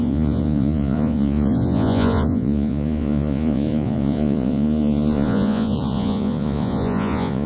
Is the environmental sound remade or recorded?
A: remade